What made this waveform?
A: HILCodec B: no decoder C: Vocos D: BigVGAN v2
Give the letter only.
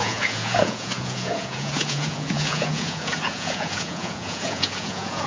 C